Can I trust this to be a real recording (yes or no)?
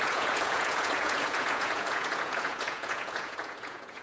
no